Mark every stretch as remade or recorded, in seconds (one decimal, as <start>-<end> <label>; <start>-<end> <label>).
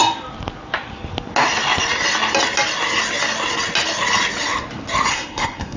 0.0-5.1 recorded; 5.1-5.8 remade